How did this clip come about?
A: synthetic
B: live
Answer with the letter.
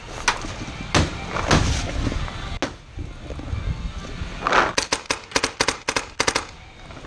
B